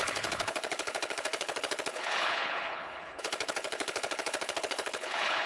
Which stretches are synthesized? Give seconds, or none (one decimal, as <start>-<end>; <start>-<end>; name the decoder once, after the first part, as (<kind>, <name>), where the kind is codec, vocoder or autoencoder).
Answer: 0.0-5.5 (codec, HILCodec)